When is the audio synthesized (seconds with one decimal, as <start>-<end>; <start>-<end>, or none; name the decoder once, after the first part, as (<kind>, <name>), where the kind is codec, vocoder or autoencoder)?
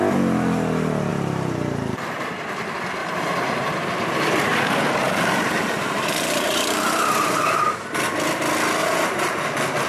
1.1-2.0 (vocoder, BigVGAN v2); 3.0-6.8; 8.8-9.4